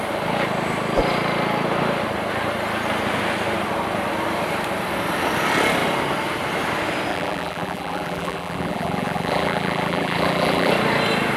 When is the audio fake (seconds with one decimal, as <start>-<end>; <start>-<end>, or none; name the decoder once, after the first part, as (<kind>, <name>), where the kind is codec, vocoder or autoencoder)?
7.1-10.7 (vocoder, BigVGAN v2)